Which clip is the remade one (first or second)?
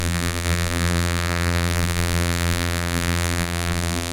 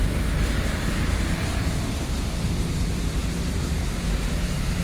first